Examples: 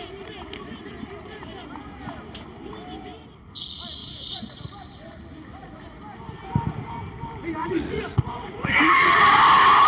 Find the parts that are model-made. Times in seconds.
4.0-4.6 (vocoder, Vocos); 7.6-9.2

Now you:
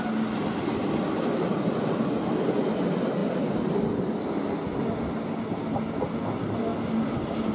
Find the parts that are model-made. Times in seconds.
none

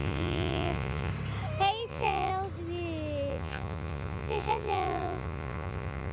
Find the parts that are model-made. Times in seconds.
0.0-1.1 (vocoder, Vocos); 1.9-2.3; 3.3-6.1

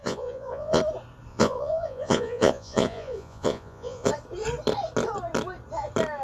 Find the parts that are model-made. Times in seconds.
0.0-0.8 (vocoder, Vocos); 1.3-4.1

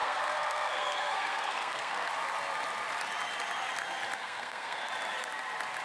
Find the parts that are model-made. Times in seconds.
0.0-2.1 (codec, SNAC); 4.2-4.9

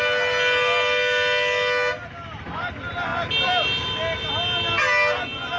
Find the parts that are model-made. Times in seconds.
none

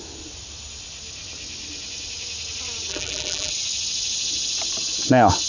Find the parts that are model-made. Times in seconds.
2.9-3.5 (vocoder, BigVGAN v2)